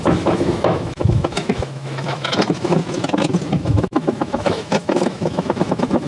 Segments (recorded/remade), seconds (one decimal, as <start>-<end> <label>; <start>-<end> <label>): 0.0-2.8 remade; 2.8-3.5 recorded; 3.5-6.1 remade